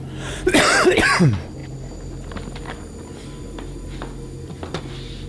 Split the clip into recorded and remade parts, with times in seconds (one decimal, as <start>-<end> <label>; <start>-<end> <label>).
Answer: 0.0-5.3 recorded